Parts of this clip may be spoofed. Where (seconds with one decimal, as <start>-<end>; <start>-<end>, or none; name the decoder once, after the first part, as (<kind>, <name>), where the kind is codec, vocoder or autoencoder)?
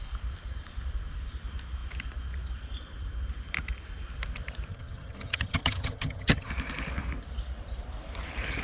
4.7-6.5 (vocoder, HiFi-GAN)